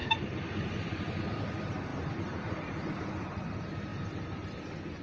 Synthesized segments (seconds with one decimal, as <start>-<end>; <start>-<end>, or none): 0.0-1.4; 1.9-3.0; 3.9-4.6